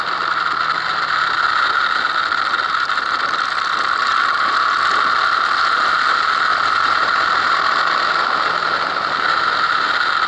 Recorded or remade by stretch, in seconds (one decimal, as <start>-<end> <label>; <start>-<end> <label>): 0.0-4.1 remade; 4.1-5.7 recorded; 5.7-6.5 remade; 6.5-7.0 recorded; 7.0-10.3 remade